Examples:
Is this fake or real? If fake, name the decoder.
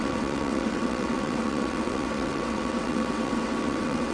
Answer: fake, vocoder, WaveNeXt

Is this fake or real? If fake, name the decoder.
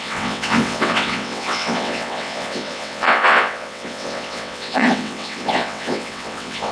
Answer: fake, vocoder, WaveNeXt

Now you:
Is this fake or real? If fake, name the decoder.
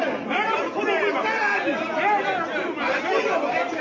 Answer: real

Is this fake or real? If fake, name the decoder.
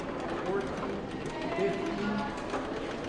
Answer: real